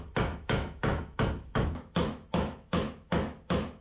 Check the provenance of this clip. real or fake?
fake